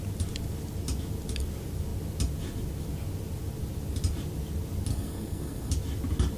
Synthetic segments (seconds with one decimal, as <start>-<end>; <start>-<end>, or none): 4.9-5.7

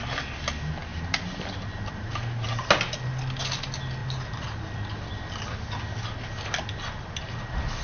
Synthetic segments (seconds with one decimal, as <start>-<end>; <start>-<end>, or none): 0.9-2.5; 4.0-4.9

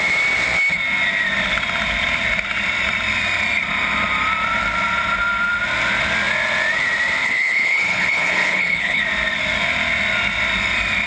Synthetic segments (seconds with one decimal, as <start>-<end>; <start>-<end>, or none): 7.2-9.0

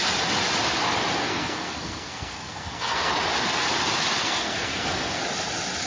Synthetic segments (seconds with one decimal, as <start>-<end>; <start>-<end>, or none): 1.2-3.1; 4.2-5.2